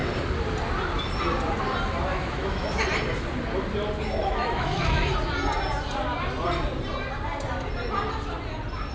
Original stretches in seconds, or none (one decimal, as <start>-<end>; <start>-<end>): 0.0-2.1; 2.8-4.2; 5.1-8.9